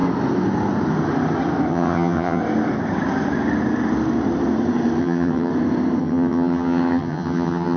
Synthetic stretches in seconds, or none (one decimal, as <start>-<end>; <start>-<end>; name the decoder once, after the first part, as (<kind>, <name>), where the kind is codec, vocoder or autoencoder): 1.7-2.4 (vocoder, HiFi-GAN); 5.0-5.5; 6.0-7.8